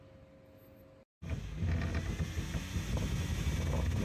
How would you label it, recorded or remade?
recorded